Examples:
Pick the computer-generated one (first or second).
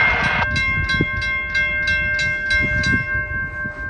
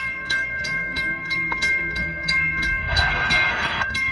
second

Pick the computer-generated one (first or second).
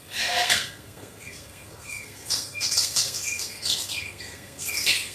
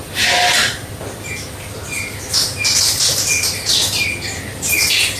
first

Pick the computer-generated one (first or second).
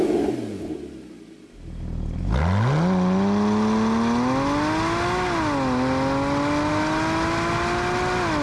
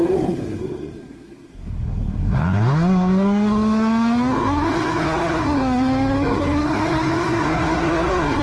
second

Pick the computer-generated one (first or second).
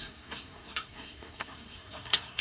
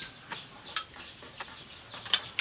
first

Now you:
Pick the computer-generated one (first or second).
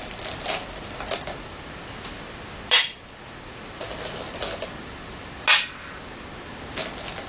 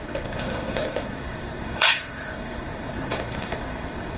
second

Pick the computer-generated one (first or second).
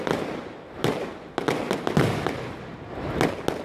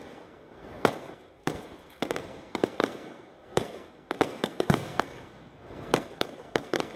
second